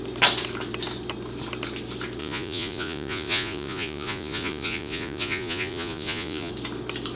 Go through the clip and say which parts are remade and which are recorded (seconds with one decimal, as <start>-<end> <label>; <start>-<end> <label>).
0.0-2.2 recorded; 2.2-6.5 remade; 6.5-7.2 recorded